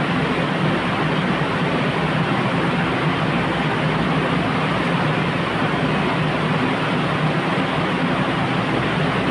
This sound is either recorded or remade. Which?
recorded